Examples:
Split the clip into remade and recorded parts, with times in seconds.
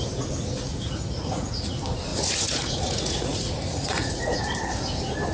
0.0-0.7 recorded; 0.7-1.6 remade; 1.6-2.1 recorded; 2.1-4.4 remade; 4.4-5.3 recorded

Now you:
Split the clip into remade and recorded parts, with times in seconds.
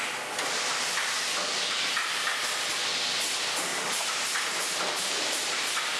0.0-3.7 recorded; 3.7-5.6 remade; 5.6-6.0 recorded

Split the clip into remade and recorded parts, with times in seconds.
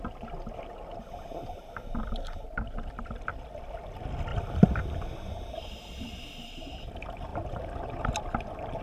0.0-8.8 recorded